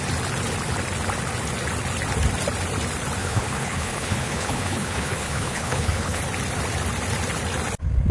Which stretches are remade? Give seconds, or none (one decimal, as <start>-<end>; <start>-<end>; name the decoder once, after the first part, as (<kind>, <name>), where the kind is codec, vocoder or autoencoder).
3.2-6.2 (codec, HILCodec)